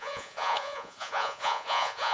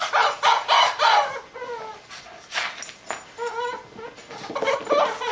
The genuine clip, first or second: second